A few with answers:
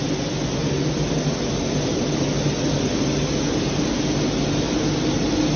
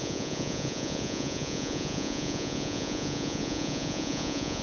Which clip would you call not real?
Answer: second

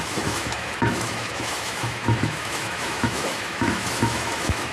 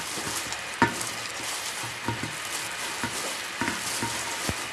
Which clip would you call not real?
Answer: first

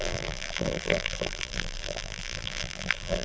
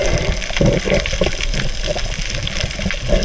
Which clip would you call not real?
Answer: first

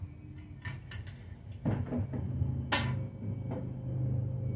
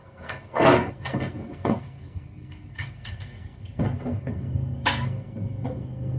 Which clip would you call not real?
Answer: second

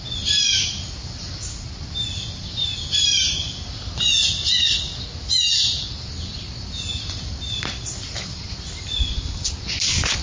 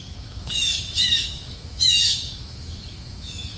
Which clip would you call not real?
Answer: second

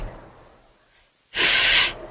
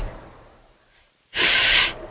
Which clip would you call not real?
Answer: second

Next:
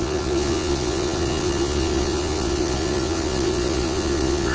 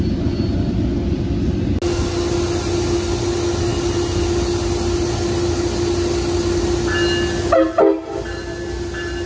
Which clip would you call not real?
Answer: first